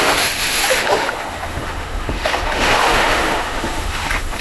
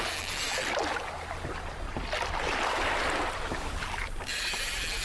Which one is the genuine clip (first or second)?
second